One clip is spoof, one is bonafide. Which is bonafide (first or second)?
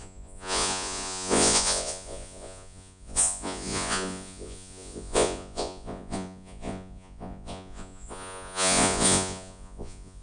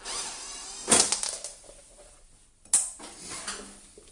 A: second